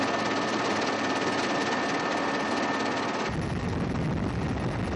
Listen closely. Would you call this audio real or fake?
real